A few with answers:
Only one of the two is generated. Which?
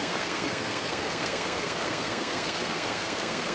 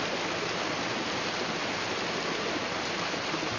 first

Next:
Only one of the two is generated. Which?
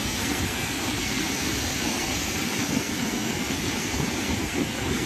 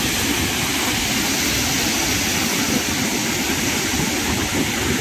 first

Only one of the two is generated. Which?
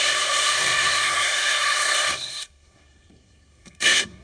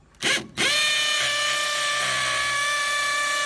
first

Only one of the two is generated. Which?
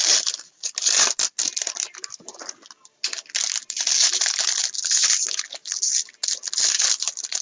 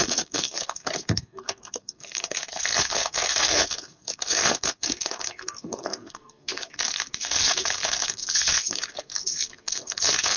second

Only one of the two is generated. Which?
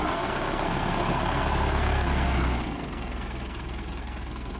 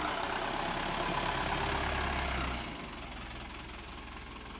first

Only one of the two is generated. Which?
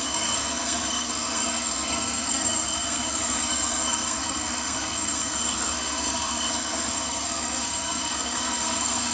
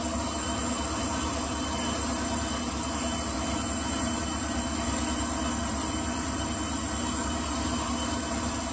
first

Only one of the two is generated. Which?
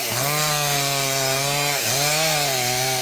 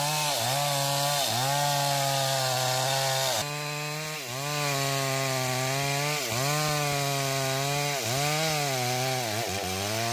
first